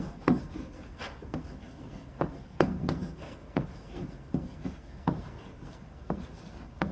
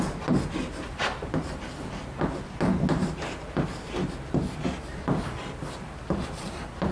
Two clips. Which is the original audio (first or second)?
second